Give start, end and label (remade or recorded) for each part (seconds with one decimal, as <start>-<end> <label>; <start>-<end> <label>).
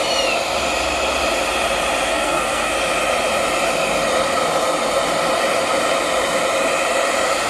0.0-2.1 recorded; 2.1-2.7 remade; 2.7-7.5 recorded